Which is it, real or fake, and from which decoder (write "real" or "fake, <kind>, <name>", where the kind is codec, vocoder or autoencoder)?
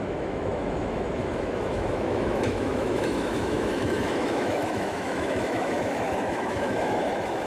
fake, autoencoder, DAC-VAE